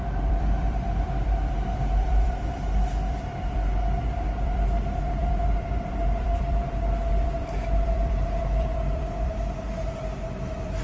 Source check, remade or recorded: remade